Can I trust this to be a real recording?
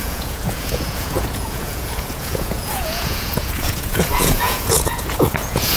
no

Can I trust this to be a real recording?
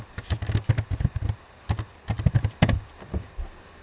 yes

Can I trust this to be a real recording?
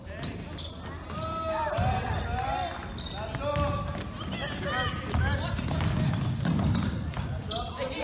yes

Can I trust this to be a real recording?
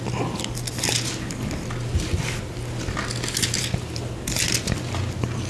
yes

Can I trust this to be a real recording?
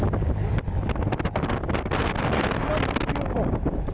yes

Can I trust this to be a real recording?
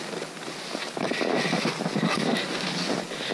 yes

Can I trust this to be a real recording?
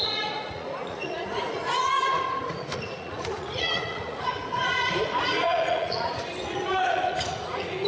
no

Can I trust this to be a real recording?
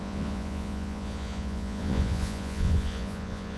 no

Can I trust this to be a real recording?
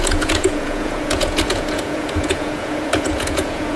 no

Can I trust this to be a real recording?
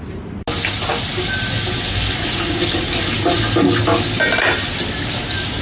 yes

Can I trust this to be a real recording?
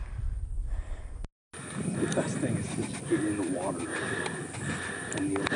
yes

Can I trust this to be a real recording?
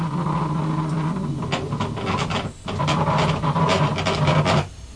yes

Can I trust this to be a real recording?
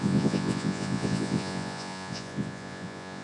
no